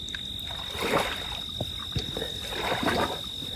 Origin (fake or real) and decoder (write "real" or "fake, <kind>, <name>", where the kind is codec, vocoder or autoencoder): real